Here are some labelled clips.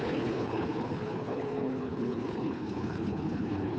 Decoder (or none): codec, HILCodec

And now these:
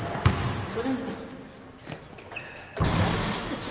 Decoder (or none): none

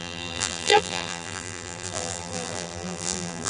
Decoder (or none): vocoder, BigVGAN v2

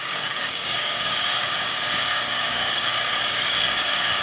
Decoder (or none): codec, DAC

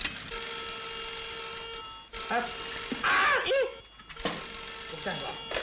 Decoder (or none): none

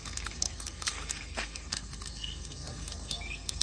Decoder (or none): codec, SNAC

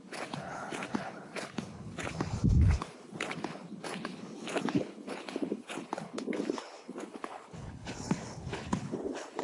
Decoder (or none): codec, HILCodec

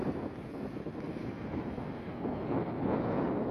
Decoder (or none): none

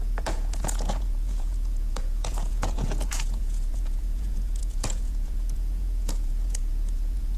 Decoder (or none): vocoder, Vocos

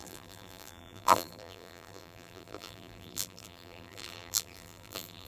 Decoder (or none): vocoder, BigVGAN v2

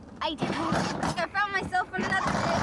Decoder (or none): none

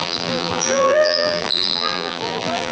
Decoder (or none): vocoder, BigVGAN v2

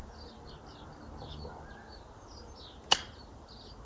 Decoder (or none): none